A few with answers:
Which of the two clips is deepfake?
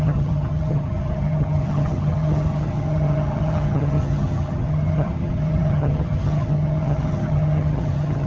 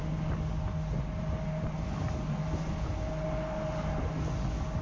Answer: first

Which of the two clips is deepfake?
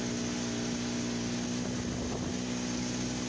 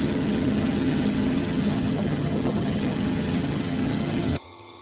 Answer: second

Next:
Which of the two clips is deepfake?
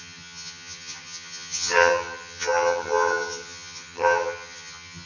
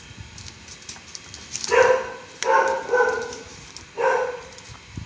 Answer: first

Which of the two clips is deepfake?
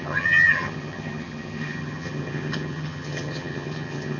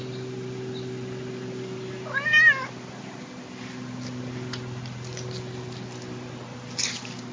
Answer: first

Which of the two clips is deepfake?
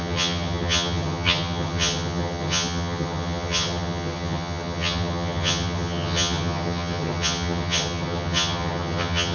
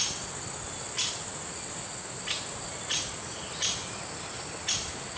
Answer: first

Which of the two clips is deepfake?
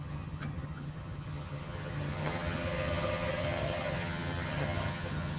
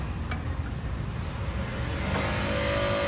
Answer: first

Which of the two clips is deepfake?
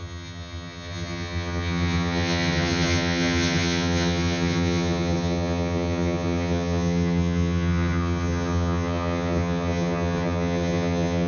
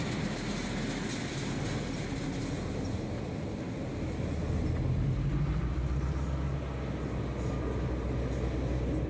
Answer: first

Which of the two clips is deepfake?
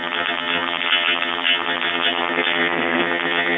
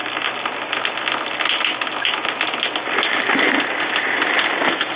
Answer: first